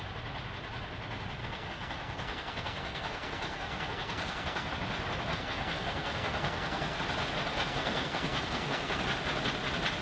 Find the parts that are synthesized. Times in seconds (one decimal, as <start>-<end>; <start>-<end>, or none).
1.4-4.7; 5.3-7.0; 7.5-9.0